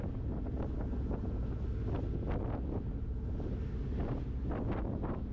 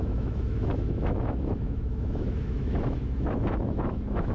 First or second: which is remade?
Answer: second